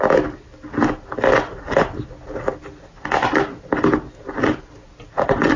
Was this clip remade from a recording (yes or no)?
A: no